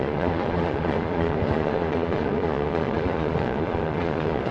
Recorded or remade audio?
remade